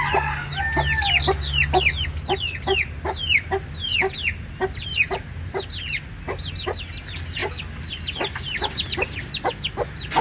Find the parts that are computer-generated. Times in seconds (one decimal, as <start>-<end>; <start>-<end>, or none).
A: none

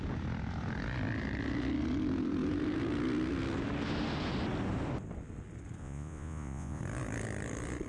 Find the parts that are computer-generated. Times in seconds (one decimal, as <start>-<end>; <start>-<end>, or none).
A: 5.8-6.8

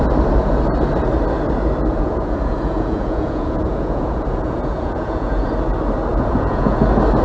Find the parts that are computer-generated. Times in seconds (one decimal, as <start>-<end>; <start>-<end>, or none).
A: 1.9-5.5; 6.1-6.8

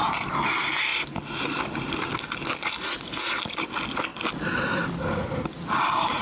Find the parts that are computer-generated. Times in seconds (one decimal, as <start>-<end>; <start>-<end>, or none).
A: 0.0-0.5

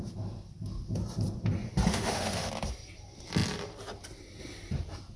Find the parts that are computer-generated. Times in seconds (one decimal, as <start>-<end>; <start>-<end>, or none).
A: 1.9-2.5

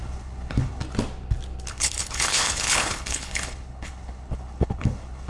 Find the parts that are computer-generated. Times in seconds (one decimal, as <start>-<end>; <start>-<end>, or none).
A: 0.0-0.8; 1.7-5.3